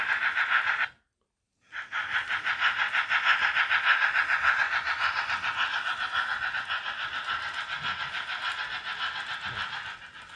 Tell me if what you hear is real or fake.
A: real